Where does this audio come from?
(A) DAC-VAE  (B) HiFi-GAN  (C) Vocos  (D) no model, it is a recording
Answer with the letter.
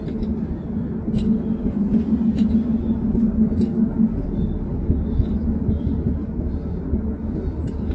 D